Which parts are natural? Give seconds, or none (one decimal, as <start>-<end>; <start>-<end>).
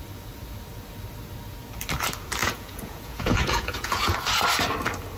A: 0.0-2.4; 4.2-5.2